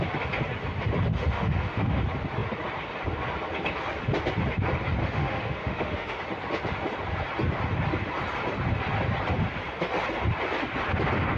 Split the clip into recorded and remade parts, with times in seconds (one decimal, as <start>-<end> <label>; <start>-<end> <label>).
0.0-1.1 recorded; 1.1-2.0 remade; 2.0-5.0 recorded; 5.0-6.2 remade; 6.2-11.4 recorded